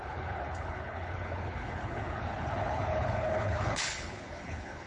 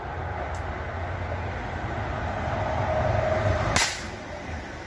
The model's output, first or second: first